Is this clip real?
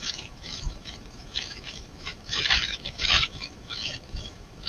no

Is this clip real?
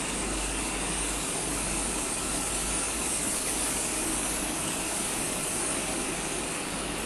no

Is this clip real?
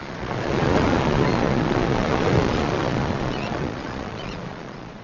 no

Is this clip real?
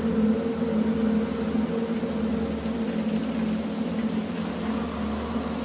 yes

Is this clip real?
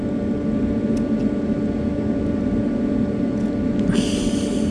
yes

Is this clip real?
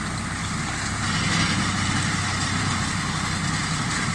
no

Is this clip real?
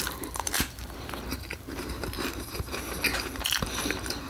no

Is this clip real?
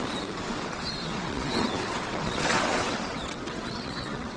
no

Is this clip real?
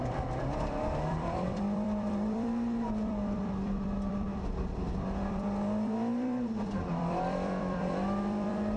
no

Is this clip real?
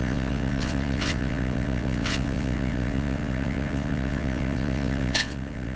no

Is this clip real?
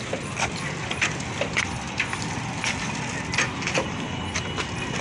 yes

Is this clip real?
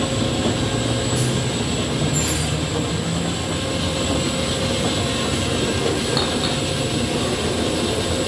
yes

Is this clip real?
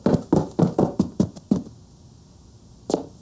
yes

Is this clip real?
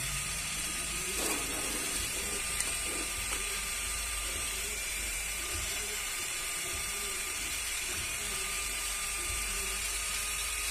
no